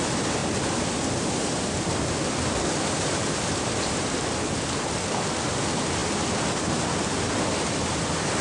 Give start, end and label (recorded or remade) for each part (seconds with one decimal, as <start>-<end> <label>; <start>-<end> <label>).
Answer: 0.0-0.4 recorded; 0.4-4.4 remade; 4.4-8.4 recorded